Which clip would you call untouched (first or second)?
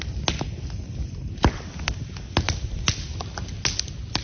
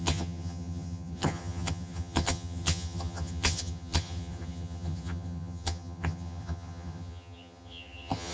first